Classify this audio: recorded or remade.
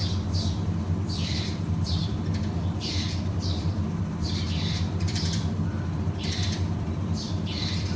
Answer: remade